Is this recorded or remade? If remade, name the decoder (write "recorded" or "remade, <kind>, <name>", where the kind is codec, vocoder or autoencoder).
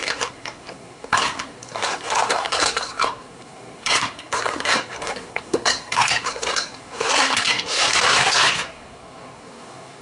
remade, codec, SNAC